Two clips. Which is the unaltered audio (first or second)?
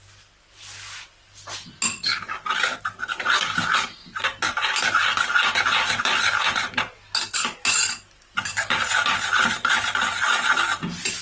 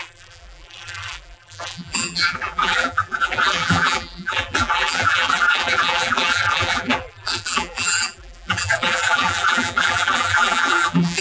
first